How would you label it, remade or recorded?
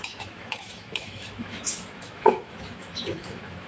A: remade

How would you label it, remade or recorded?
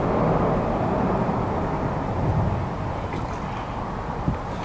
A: recorded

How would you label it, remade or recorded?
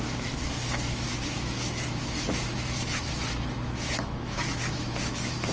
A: remade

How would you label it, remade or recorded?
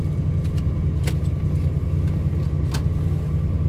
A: recorded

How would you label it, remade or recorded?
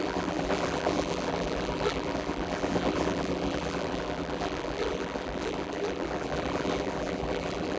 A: remade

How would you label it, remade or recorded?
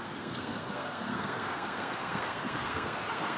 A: remade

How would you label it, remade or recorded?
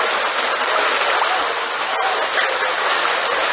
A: recorded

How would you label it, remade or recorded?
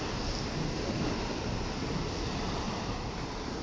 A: recorded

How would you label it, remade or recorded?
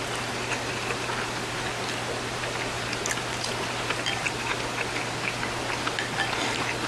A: recorded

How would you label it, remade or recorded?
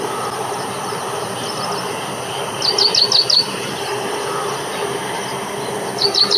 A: recorded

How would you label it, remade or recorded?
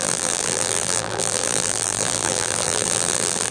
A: remade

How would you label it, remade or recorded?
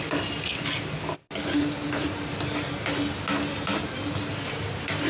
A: recorded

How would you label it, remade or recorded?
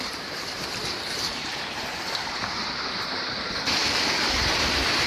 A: remade